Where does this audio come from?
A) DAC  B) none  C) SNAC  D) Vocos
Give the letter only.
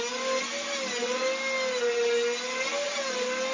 B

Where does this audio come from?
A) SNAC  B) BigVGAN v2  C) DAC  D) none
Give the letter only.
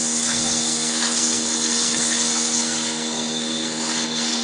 A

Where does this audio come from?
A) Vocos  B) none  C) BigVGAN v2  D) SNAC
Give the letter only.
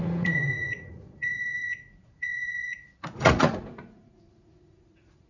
A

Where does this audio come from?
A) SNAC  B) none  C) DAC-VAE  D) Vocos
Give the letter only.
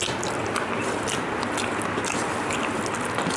B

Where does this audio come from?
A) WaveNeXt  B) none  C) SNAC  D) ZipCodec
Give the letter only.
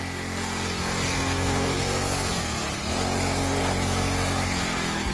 B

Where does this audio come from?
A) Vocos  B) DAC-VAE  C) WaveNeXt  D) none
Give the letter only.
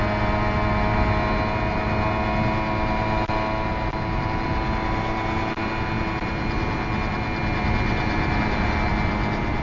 D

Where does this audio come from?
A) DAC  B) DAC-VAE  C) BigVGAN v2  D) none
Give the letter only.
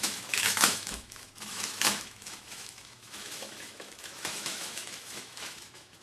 B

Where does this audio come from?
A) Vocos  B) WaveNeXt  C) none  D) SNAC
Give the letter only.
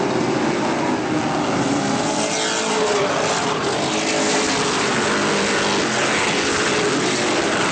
C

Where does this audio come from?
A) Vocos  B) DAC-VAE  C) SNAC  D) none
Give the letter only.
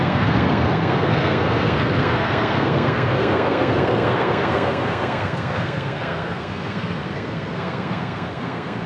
C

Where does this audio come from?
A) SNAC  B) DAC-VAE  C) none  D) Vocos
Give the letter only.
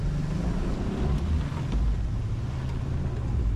C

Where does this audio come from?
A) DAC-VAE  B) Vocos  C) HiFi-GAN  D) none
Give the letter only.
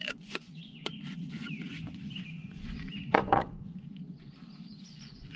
B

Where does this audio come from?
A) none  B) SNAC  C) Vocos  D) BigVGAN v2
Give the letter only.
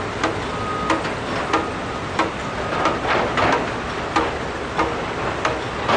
A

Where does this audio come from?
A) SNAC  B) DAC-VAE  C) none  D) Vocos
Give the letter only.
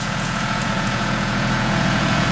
D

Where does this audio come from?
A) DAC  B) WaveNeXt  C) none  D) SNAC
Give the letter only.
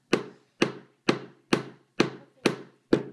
C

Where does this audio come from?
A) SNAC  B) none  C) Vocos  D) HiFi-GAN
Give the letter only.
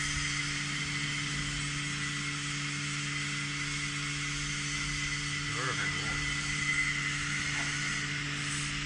B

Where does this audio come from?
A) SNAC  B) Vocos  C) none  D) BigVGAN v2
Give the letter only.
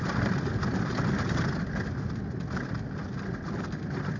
C